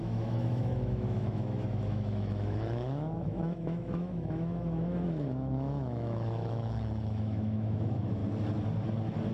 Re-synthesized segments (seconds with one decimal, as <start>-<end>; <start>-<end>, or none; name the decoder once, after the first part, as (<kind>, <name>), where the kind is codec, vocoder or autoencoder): 0.0-8.2 (autoencoder, DAC-VAE)